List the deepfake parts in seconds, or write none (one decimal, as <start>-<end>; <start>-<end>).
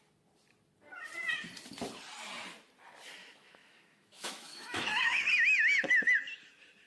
3.2-5.2